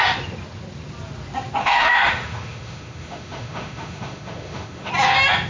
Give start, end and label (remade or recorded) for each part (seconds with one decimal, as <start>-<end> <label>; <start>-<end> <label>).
0.0-1.6 recorded; 1.6-4.9 remade; 4.9-5.5 recorded